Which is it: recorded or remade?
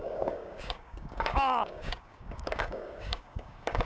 remade